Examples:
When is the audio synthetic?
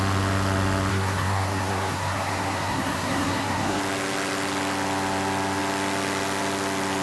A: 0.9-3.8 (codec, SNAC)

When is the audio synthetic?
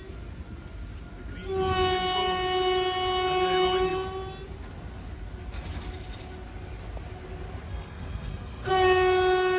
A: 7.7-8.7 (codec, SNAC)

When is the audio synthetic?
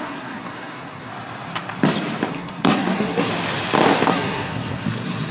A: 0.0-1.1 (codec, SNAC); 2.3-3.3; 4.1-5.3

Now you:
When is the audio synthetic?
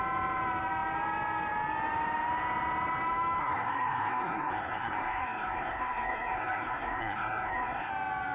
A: 3.4-7.9 (codec, SNAC)